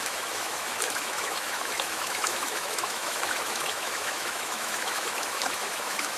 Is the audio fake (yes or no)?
yes